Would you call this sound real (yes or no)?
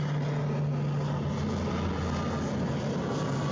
yes